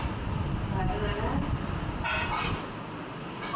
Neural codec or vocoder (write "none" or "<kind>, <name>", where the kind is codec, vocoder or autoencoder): none